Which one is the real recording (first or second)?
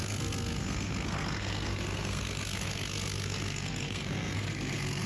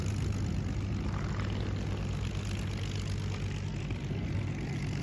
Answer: second